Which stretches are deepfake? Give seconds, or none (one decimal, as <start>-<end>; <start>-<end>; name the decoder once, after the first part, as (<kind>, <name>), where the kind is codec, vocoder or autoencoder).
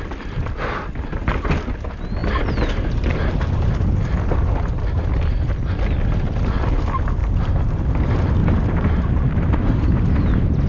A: 7.2-7.9 (vocoder, BigVGAN v2); 8.4-10.1